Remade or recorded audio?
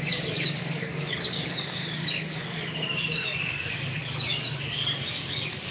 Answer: remade